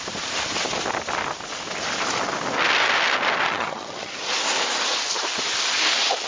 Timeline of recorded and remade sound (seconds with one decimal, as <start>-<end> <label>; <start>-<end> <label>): 0.0-3.5 recorded; 3.5-4.1 remade; 4.1-6.3 recorded